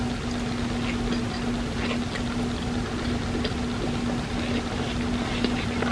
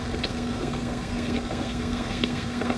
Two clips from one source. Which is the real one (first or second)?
first